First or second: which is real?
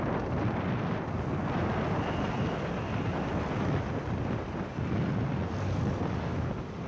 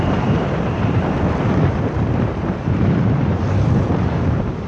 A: first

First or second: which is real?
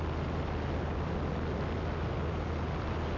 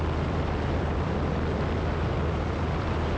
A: first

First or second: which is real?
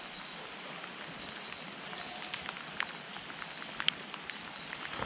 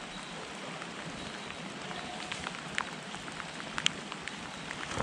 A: first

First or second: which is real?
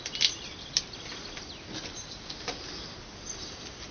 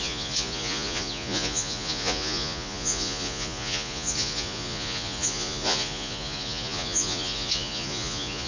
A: first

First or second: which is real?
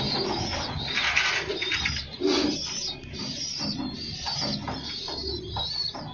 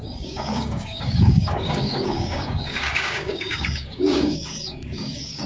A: first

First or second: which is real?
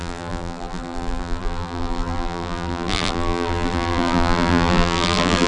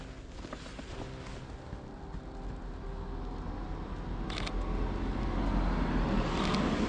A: second